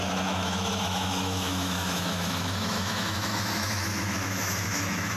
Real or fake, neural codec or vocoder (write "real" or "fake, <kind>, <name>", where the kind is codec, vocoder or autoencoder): fake, autoencoder, DAC-VAE